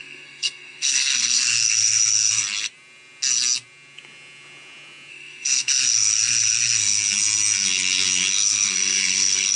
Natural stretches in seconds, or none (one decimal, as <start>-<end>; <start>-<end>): 2.4-5.1; 7.0-8.3